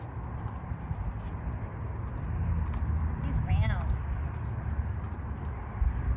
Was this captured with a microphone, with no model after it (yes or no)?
yes